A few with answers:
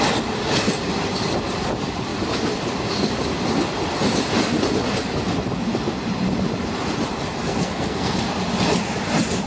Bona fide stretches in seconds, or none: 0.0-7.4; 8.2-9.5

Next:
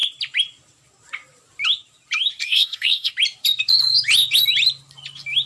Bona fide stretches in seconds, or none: 0.0-2.4; 3.1-5.5

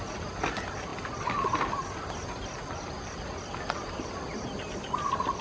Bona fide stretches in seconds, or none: 0.0-5.4